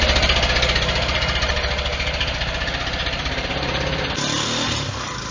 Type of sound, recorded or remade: recorded